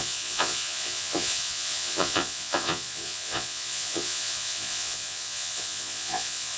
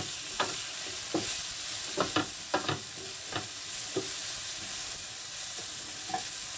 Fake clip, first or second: first